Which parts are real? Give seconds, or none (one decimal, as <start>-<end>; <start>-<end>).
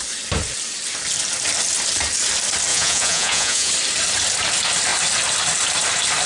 0.0-2.7; 3.7-6.3